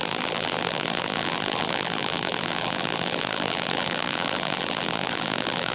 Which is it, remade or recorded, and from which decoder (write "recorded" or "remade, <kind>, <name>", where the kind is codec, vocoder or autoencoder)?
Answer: remade, vocoder, BigVGAN v2